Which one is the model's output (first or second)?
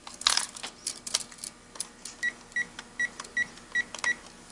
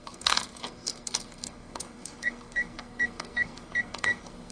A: second